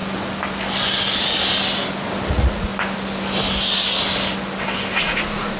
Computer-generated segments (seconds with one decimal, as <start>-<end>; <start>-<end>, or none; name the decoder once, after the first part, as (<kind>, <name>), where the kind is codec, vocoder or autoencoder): 2.3-2.7 (vocoder, Vocos); 5.0-5.6